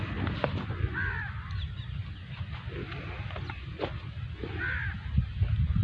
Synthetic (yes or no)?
no